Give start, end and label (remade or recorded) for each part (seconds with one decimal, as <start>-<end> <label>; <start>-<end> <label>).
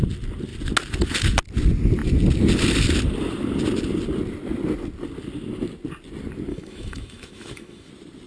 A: 0.0-6.5 recorded; 6.5-7.9 remade; 7.9-8.3 recorded